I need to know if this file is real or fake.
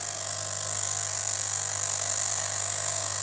fake